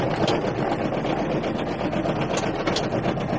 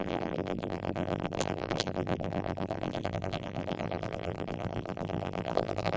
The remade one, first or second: second